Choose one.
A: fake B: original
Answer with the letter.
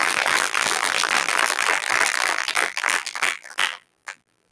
A